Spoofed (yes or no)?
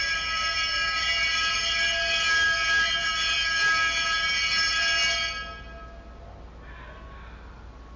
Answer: no